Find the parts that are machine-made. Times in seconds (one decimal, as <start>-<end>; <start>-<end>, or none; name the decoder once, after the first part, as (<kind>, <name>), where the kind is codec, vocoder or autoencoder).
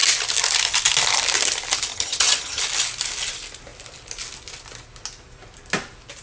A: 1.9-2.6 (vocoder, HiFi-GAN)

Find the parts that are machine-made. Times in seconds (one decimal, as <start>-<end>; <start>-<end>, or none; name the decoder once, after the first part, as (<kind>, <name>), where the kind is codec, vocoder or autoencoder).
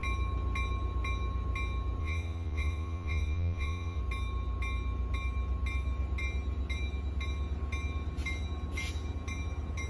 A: 2.0-4.0 (vocoder, Vocos)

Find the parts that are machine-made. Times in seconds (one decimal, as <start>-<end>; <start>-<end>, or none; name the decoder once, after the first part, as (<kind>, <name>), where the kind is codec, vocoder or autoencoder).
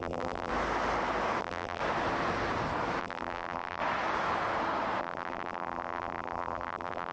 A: 0.0-0.5 (vocoder, BigVGAN v2); 1.4-1.8; 3.0-3.8; 5.0-7.1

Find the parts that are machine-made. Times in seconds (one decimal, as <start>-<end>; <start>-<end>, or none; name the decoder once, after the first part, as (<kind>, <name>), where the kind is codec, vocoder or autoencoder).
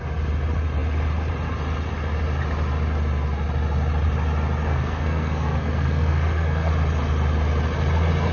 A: 4.7-6.7 (codec, SNAC)